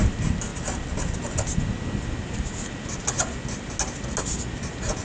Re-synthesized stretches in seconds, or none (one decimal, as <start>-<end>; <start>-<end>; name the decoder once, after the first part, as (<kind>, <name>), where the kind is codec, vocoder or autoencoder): none